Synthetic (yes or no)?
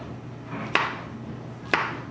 no